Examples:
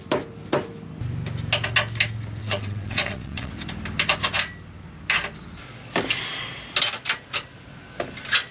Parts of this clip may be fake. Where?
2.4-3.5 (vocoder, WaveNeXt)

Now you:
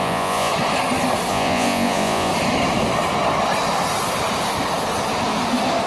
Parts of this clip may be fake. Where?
0.0-0.5 (vocoder, Vocos); 1.3-2.3